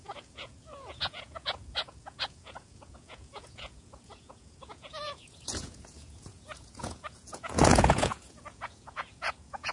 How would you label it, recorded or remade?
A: remade